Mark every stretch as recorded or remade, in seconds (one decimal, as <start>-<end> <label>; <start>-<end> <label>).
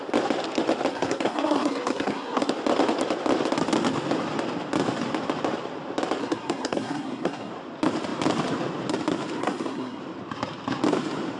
0.0-0.9 recorded; 0.9-2.5 remade; 2.5-6.2 recorded; 6.2-7.5 remade; 7.5-9.4 recorded; 9.4-10.0 remade; 10.0-11.4 recorded